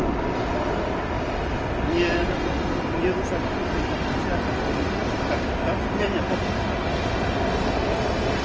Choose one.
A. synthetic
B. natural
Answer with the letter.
B